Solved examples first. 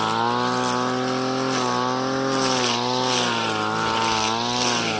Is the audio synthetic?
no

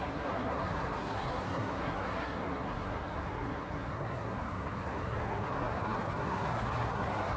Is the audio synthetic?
yes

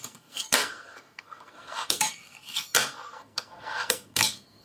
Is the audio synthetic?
yes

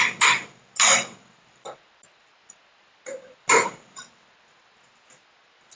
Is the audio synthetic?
no